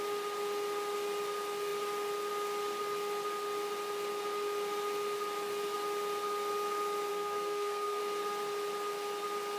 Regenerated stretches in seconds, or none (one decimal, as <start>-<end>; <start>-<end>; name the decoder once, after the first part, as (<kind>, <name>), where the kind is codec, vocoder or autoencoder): 7.1-8.0 (codec, SNAC)